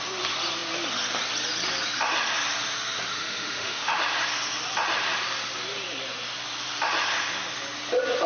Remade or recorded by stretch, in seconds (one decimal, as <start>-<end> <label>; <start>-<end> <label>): 0.0-3.1 recorded; 3.1-4.0 remade; 4.0-8.3 recorded